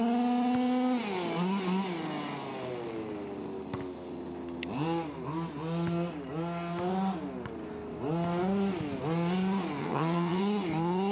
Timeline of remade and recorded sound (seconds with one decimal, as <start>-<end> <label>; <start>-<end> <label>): 0.0-9.8 recorded; 9.8-10.4 remade; 10.4-11.1 recorded

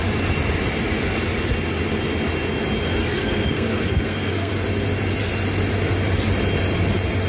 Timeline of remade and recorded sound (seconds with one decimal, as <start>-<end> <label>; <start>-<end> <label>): 0.0-3.0 recorded; 3.0-4.5 remade; 4.5-7.3 recorded

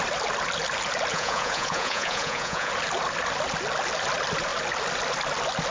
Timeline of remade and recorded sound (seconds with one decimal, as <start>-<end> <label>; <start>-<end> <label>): 0.0-1.1 recorded; 1.1-2.7 remade; 2.7-5.7 recorded

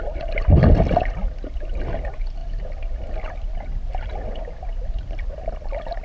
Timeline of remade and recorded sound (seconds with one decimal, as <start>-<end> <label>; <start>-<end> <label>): 0.0-6.0 recorded